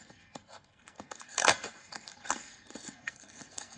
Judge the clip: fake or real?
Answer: fake